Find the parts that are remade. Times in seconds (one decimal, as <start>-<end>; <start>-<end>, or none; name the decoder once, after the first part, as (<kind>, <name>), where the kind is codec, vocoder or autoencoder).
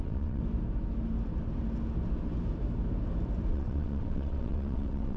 0.0-0.4 (vocoder, WaveNeXt); 3.5-5.2